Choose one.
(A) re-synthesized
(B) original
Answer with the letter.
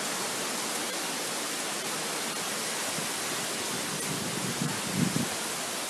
B